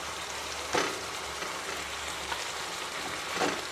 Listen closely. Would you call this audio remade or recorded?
recorded